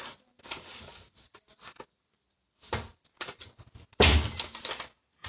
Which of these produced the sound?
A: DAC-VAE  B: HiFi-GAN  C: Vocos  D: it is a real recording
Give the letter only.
D